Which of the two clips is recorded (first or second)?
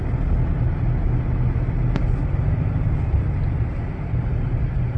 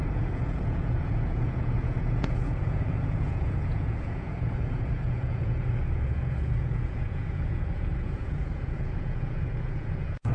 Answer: first